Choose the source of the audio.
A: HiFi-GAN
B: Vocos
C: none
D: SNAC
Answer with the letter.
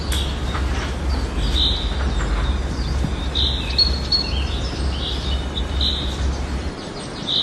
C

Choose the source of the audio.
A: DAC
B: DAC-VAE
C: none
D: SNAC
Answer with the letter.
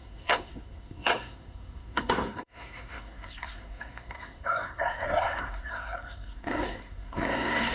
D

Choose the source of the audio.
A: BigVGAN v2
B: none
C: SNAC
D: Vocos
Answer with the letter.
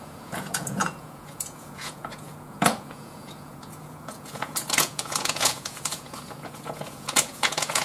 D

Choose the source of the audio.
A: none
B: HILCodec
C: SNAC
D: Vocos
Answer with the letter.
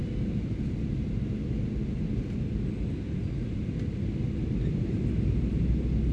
A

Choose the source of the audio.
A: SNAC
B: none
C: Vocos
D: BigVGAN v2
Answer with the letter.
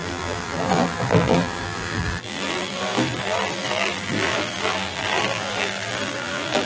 D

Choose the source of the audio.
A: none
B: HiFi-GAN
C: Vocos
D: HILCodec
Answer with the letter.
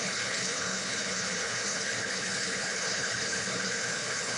D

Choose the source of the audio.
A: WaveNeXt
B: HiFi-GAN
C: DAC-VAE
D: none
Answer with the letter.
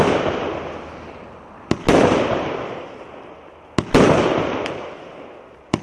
D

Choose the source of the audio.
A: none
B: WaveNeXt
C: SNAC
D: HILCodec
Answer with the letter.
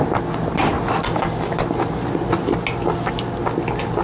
A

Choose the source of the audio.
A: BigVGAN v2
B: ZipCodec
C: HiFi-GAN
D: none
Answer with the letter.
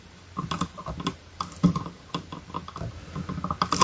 D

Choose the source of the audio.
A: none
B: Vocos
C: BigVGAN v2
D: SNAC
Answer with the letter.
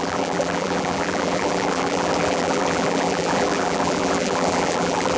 C